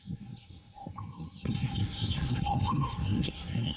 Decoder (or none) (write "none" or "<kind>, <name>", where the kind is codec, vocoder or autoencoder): codec, SNAC